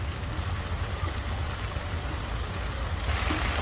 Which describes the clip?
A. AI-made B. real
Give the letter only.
B